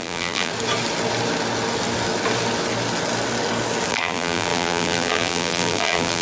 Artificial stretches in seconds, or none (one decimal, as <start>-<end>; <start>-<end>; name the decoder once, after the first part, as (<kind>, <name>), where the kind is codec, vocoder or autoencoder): 0.0-0.5 (vocoder, BigVGAN v2); 3.9-6.2